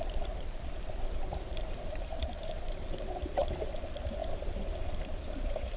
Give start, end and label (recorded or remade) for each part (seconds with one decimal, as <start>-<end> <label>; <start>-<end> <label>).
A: 0.0-5.8 remade